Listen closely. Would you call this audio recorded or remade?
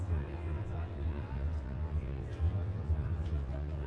remade